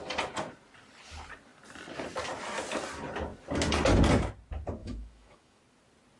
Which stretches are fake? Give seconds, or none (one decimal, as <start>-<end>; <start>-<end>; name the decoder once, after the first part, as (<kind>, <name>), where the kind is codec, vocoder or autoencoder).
4.8-5.6 (autoencoder, DAC-VAE)